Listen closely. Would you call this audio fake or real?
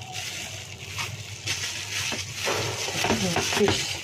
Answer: real